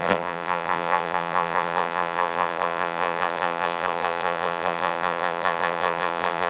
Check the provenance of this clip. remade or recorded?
remade